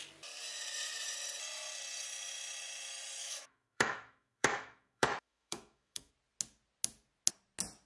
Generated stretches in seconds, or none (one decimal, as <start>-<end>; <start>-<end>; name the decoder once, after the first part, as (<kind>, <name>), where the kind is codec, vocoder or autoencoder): 3.2-6.1 (autoencoder, DAC-VAE)